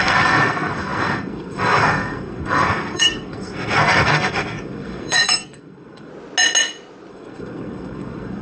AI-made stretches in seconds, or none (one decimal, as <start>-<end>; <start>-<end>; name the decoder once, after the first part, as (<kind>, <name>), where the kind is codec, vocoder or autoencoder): 0.0-6.1 (codec, SNAC); 7.1-8.4